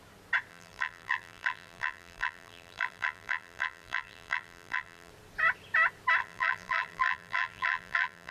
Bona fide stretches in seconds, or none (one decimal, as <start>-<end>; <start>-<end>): 0.0-0.5; 5.1-6.2